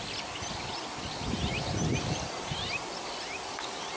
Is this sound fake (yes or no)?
no